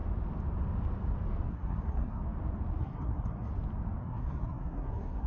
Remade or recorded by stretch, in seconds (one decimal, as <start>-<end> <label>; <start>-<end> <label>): 0.0-1.5 recorded; 1.5-2.2 remade; 2.2-2.8 recorded; 2.8-3.5 remade; 3.5-4.0 recorded; 4.0-5.3 remade